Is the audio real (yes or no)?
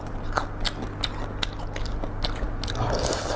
yes